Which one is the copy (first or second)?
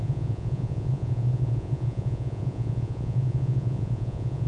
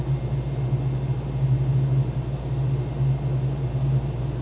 first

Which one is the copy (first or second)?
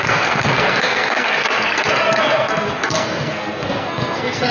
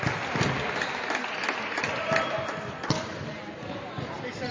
first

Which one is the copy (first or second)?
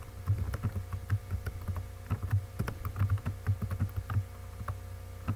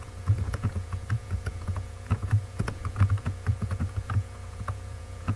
second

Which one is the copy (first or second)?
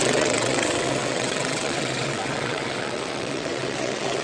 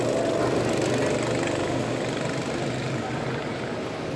first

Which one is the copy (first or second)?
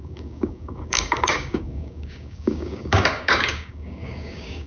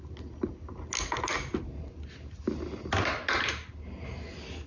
first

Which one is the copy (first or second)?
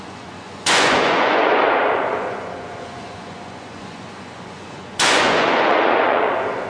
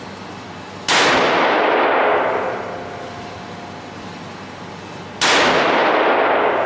first